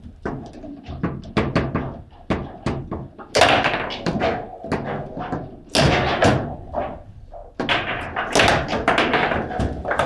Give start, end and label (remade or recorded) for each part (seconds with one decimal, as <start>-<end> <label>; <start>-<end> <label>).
0.0-6.2 recorded; 6.2-6.7 remade; 6.7-10.1 recorded